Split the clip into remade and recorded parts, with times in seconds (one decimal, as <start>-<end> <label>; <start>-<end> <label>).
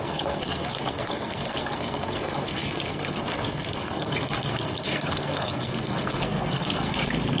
0.0-7.4 remade